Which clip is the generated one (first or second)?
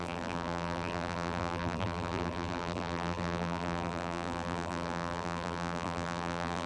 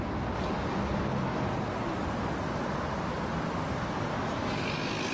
first